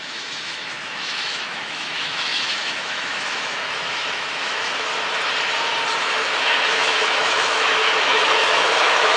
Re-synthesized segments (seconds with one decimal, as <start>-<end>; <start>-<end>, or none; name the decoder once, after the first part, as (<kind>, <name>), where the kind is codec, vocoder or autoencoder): 0.0-4.9 (autoencoder, DAC-VAE); 6.0-9.2